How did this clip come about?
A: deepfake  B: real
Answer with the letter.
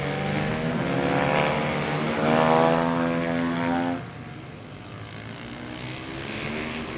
B